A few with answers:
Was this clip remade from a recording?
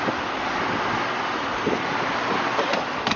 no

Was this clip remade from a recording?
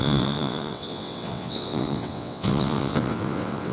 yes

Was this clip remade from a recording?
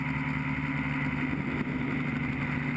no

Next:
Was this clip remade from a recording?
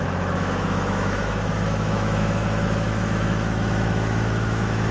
yes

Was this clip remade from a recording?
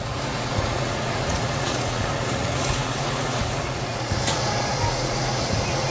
yes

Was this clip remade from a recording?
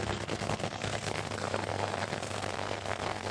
yes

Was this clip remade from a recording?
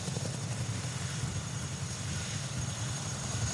no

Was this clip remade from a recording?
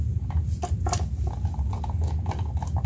no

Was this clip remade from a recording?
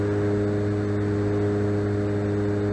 no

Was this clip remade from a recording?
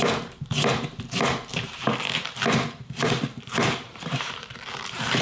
yes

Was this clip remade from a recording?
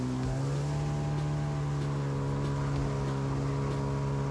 no